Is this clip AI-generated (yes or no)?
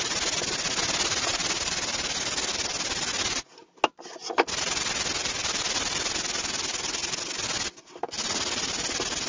no